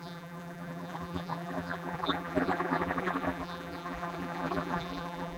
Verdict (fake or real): fake